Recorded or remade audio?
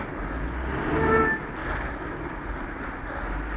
recorded